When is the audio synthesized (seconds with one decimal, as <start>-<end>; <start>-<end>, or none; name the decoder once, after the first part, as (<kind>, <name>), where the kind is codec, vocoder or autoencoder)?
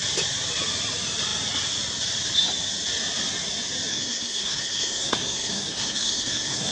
3.9-6.7 (codec, SNAC)